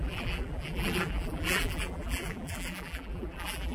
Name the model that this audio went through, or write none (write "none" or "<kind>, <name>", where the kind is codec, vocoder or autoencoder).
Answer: vocoder, BigVGAN v2